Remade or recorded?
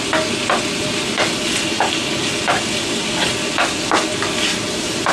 recorded